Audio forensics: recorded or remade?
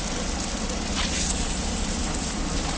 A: recorded